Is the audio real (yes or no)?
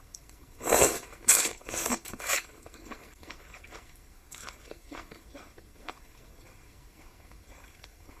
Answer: no